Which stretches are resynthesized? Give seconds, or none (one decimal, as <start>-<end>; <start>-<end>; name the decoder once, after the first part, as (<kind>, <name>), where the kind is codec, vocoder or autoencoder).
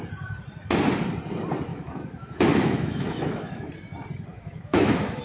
1.7-3.7 (autoencoder, DAC-VAE); 4.3-5.2